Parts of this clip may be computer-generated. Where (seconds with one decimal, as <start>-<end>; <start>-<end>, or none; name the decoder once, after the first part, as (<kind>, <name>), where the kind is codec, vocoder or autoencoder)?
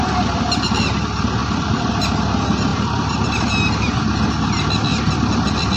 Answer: 1.4-1.9 (vocoder, BigVGAN v2); 2.7-3.2